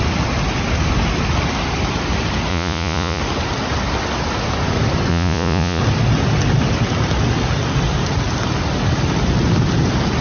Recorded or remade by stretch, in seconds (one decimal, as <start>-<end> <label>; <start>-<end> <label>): 0.0-2.5 recorded; 2.5-3.2 remade; 3.2-5.1 recorded; 5.1-5.8 remade; 5.8-10.2 recorded